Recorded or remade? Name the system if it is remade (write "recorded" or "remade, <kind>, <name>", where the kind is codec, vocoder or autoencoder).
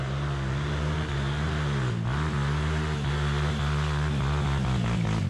recorded